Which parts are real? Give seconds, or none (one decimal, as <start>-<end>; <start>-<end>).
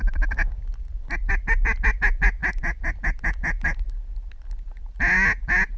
0.0-5.8